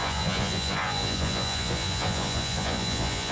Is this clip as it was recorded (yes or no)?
no